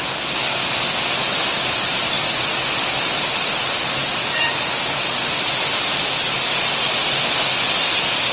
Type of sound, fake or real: real